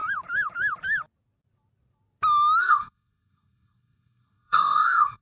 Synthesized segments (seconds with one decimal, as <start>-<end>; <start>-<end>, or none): 2.6-5.2